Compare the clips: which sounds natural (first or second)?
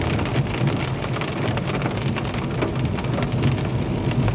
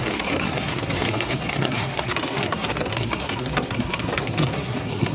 first